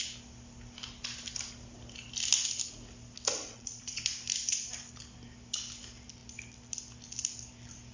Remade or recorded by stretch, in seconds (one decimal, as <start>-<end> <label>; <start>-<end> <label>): 0.0-3.4 recorded; 3.4-4.0 remade; 4.0-7.9 recorded